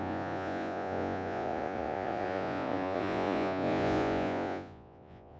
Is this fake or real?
fake